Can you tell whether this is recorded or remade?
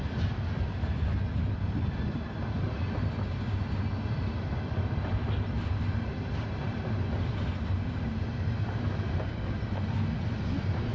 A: recorded